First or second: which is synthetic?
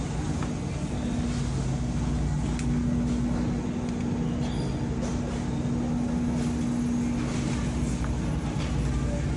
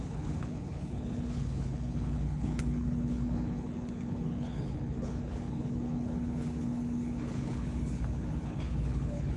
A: second